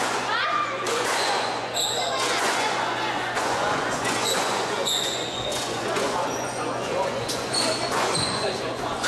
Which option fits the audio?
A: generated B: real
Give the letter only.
A